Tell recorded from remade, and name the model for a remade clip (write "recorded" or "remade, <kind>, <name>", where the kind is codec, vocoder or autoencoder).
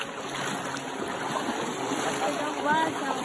recorded